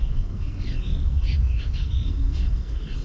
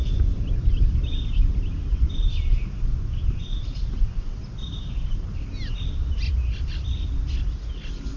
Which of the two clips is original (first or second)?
second